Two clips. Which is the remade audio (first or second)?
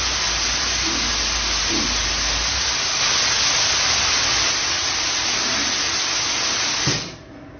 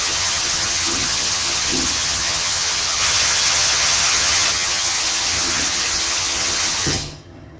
second